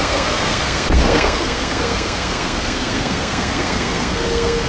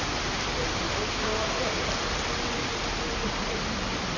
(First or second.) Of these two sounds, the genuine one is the second